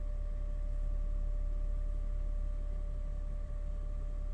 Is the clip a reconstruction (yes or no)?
yes